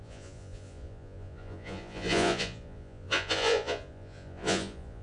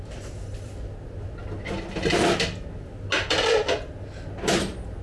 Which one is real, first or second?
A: second